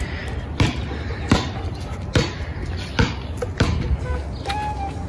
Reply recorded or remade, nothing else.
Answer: recorded